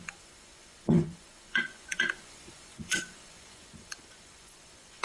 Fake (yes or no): yes